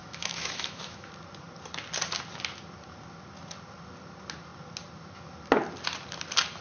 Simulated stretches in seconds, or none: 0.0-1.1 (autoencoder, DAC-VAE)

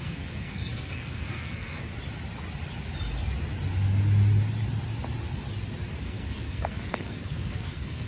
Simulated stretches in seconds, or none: 0.0-1.9 (codec, SNAC); 6.0-8.1

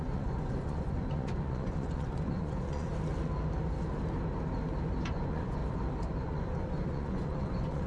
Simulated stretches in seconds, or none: 0.0-2.9 (vocoder, Vocos); 5.1-5.6; 6.2-7.9

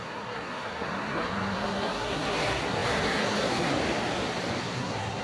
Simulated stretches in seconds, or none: 0.0-3.8 (codec, SNAC); 4.6-5.2

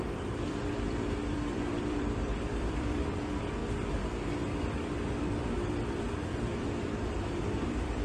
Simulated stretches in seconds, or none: 0.0-3.6 (vocoder, BigVGAN v2); 5.1-8.0

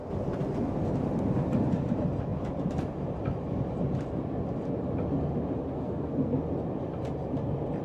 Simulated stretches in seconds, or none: 5.7-6.4 (codec, SNAC)

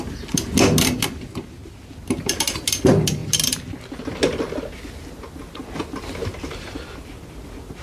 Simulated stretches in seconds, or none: 6.2-7.1 (vocoder, BigVGAN v2)

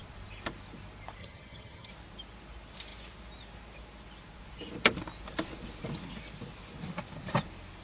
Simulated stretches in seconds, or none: 1.2-1.9 (vocoder, HiFi-GAN)